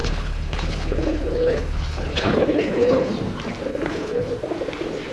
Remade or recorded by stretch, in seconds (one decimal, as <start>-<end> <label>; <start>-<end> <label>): 0.0-3.1 remade; 3.1-3.7 recorded; 3.7-4.3 remade; 4.3-5.1 recorded